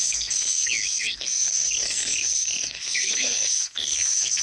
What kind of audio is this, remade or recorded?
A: remade